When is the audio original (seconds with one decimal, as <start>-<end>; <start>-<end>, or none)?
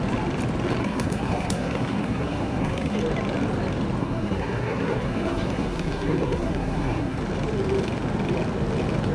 0.0-0.8; 3.0-4.0; 7.2-9.1